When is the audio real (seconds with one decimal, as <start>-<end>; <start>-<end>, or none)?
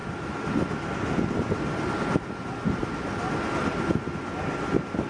1.9-5.1